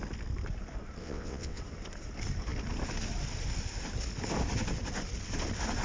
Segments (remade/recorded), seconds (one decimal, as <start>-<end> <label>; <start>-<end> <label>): 0.0-1.0 recorded; 1.0-1.6 remade; 1.6-5.8 recorded